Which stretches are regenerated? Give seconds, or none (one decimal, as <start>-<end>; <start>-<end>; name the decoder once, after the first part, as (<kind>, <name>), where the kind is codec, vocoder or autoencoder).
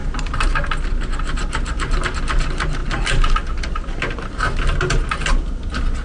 none